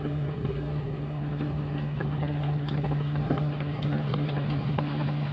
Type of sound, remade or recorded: remade